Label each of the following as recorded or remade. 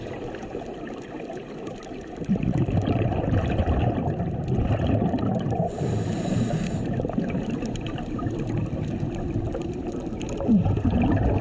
remade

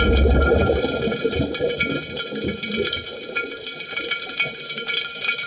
remade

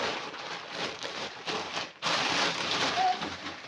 remade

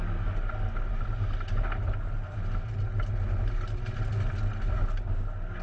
recorded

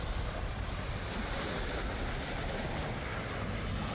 recorded